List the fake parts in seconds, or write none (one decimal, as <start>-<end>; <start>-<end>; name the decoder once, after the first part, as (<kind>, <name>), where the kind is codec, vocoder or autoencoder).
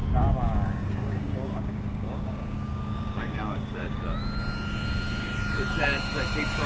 0.0-4.0 (codec, DAC)